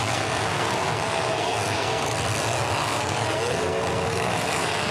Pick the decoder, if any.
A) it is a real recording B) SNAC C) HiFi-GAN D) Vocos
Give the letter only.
B